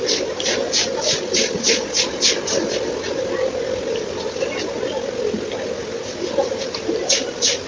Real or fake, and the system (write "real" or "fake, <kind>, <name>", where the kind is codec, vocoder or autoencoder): real